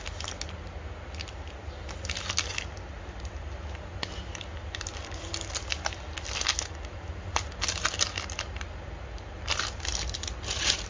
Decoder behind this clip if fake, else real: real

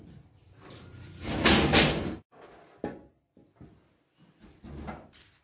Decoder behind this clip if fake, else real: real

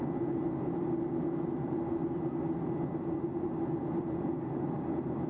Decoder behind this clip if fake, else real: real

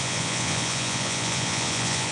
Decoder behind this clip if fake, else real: fake, vocoder, Vocos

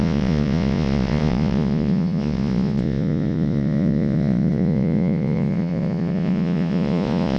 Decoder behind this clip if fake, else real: fake, vocoder, Vocos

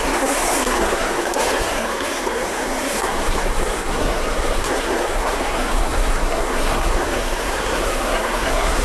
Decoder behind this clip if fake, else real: fake, codec, SNAC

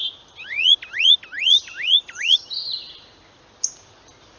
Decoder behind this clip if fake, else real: real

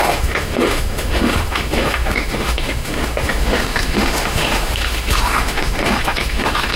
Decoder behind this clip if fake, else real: fake, autoencoder, DAC-VAE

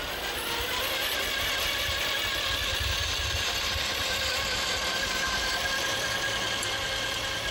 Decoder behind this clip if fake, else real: fake, vocoder, BigVGAN v2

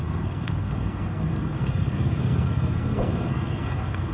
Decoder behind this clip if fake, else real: fake, codec, SNAC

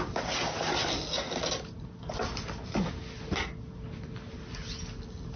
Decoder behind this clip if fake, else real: real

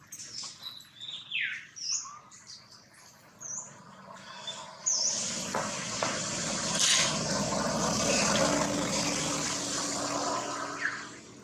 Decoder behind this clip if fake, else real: real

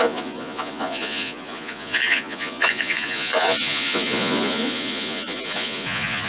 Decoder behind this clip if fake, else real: fake, vocoder, Vocos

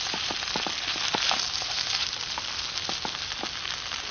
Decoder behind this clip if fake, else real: real